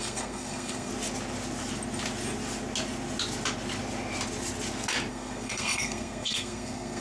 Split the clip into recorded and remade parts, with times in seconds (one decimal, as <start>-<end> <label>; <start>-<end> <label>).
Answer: 0.0-0.9 remade; 0.9-5.1 recorded; 5.1-7.0 remade